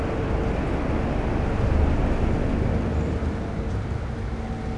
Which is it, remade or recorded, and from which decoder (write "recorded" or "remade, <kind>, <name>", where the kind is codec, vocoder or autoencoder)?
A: recorded